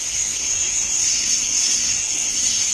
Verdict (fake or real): fake